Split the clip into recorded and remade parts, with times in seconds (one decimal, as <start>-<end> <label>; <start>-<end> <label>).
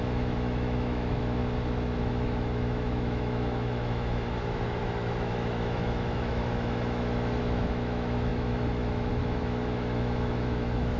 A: 0.0-1.4 remade; 1.4-2.0 recorded; 2.0-11.0 remade